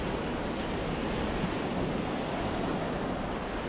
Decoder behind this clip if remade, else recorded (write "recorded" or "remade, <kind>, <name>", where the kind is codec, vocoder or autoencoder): recorded